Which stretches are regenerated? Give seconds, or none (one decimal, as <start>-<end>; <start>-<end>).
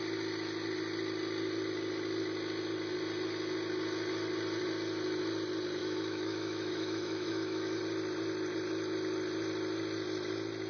5.8-7.8